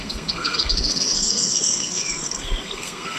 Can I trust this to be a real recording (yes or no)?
no